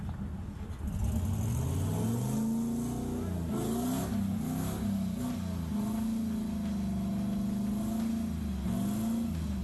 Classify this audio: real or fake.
real